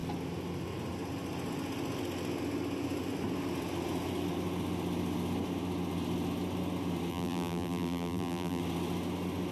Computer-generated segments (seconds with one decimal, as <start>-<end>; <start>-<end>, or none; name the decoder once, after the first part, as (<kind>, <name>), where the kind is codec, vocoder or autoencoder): 7.1-8.6 (vocoder, BigVGAN v2)